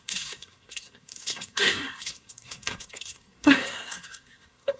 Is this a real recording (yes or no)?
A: no